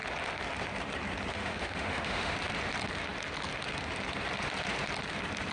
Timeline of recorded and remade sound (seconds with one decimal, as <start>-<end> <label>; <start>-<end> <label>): 0.0-1.3 recorded; 1.3-2.3 remade; 2.3-5.5 recorded